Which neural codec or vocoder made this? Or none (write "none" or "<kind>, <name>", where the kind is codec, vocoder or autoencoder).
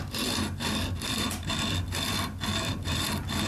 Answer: none